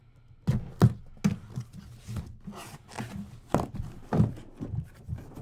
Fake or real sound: real